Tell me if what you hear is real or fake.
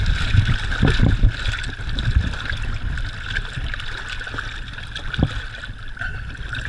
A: real